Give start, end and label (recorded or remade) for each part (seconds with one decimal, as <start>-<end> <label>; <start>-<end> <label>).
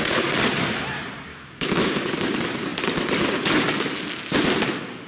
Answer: 0.0-1.3 recorded; 1.3-2.0 remade; 2.0-5.1 recorded